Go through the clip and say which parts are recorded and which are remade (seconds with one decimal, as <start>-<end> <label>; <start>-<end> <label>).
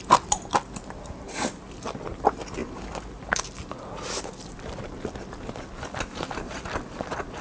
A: 0.0-7.4 recorded